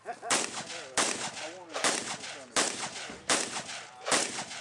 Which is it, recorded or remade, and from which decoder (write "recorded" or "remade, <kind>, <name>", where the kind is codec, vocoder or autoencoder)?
recorded